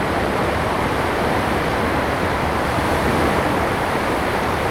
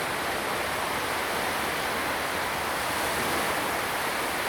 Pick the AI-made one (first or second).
first